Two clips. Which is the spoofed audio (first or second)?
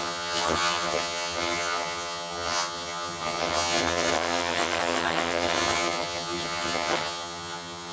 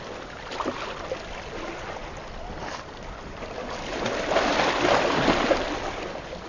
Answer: first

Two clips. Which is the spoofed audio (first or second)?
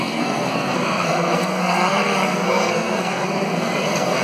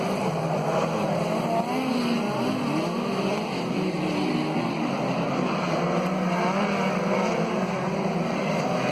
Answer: first